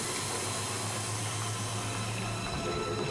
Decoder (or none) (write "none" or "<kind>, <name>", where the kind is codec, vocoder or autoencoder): none